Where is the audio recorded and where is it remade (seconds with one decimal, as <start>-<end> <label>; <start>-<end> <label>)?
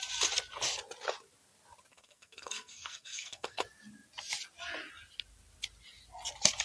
0.0-1.9 recorded; 1.9-3.6 remade; 3.6-6.6 recorded